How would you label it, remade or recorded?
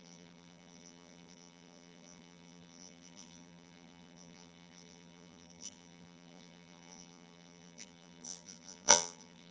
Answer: remade